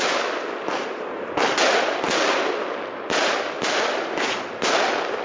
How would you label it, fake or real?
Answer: real